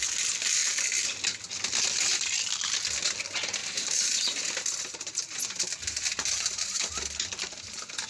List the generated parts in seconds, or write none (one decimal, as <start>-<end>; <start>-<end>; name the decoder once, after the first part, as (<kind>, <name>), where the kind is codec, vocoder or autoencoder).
3.6-7.0 (vocoder, BigVGAN v2)